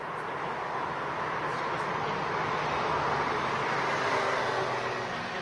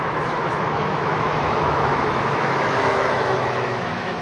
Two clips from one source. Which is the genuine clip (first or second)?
first